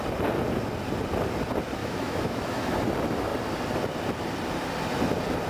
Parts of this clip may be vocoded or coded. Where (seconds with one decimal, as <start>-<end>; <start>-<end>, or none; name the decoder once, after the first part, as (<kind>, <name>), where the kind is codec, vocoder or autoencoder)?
1.8-2.8 (autoencoder, DAC-VAE)